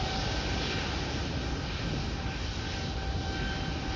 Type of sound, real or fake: real